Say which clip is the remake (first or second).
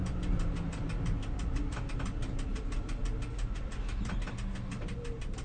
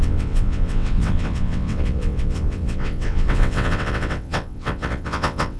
second